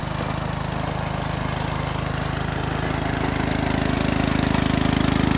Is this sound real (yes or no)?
yes